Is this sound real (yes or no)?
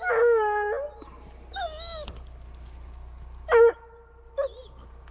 yes